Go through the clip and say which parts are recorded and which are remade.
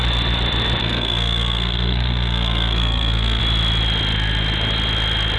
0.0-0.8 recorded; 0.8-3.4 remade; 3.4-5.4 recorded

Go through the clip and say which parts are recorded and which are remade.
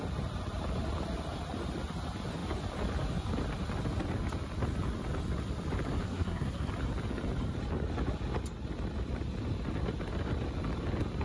0.0-6.0 recorded; 6.0-6.7 remade; 6.7-11.2 recorded